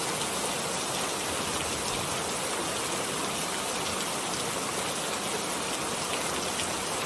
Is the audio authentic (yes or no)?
yes